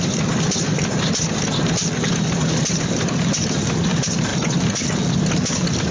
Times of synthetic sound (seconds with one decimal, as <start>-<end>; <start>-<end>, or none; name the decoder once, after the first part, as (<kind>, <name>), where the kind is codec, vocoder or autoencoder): none